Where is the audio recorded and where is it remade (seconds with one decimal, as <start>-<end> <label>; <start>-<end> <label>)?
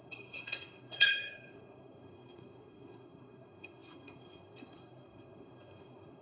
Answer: 0.0-6.2 remade